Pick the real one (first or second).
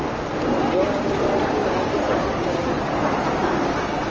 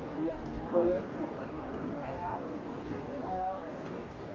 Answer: first